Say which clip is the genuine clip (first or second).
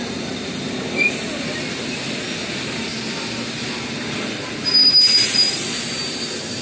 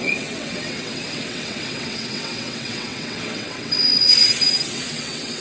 first